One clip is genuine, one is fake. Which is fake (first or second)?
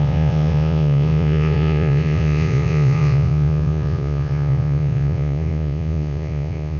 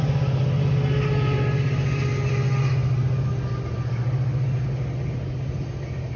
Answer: first